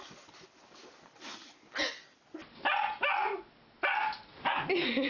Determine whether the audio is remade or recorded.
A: recorded